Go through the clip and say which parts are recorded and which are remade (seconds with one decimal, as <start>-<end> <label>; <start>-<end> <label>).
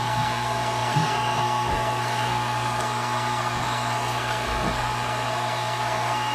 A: 0.0-6.3 remade